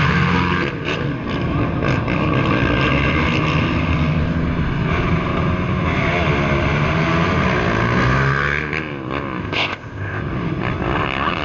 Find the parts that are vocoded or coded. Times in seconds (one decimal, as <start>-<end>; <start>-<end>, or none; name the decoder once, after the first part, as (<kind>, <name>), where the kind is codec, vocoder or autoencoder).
9.4-10.2 (codec, ZipCodec)